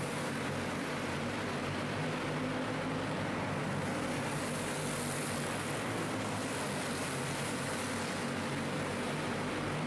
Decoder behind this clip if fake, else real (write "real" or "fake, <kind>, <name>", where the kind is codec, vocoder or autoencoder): real